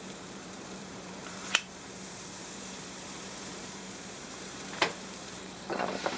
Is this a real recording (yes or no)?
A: no